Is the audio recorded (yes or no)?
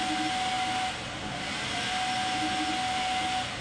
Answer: yes